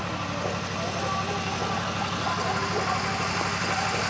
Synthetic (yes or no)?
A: no